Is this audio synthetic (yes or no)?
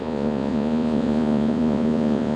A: yes